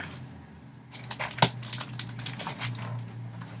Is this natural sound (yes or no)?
yes